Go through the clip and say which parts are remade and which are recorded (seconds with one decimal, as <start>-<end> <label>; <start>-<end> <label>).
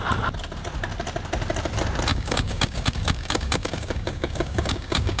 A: 0.0-2.1 recorded; 2.1-5.2 remade